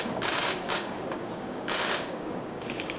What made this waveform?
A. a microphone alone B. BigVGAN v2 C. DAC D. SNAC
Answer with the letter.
C